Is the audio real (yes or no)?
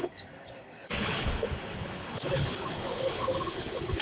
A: no